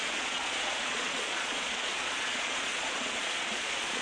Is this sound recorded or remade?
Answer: remade